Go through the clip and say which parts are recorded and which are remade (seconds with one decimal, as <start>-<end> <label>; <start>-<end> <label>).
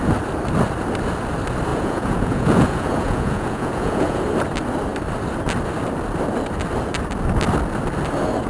0.0-1.7 recorded; 1.7-4.2 remade; 4.2-8.5 recorded